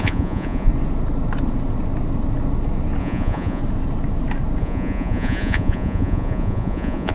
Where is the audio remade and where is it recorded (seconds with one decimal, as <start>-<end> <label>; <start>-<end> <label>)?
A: 0.0-0.7 remade; 0.7-3.0 recorded; 3.0-3.6 remade; 3.6-4.6 recorded; 4.6-7.1 remade